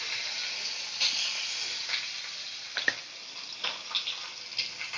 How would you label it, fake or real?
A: real